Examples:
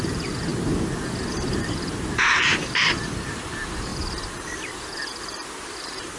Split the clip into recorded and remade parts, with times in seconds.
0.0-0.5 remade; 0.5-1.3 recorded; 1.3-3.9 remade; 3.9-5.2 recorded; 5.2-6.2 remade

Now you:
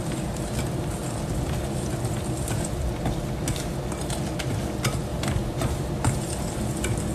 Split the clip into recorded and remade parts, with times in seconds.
0.0-5.1 recorded; 5.1-6.4 remade; 6.4-7.1 recorded

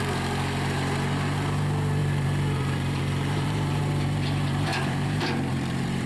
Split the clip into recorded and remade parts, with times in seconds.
0.0-2.0 recorded; 2.0-6.1 remade